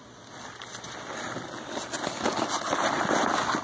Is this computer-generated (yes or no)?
no